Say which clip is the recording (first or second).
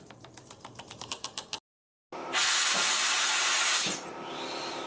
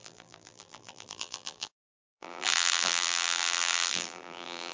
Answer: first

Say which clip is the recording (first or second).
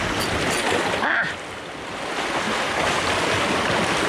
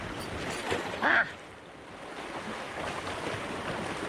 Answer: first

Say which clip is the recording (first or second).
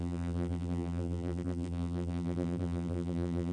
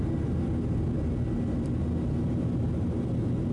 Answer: second